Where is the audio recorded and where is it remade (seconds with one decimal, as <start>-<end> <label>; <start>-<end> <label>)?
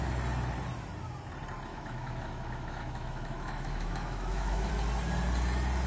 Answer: 0.0-1.7 recorded; 1.7-4.7 remade; 4.7-5.9 recorded